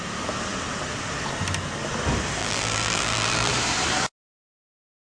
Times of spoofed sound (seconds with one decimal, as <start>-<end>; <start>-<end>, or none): 2.4-3.5